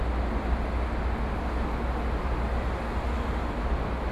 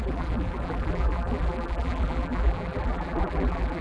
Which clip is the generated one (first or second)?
second